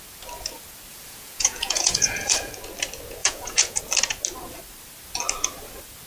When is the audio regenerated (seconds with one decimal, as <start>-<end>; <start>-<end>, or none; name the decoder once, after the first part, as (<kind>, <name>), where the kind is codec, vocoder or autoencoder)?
0.9-2.5 (vocoder, Vocos); 3.2-3.8